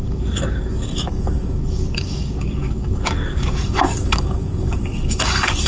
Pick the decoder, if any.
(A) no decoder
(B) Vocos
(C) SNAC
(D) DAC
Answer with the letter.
D